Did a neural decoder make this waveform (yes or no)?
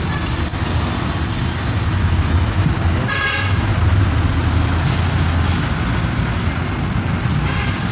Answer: no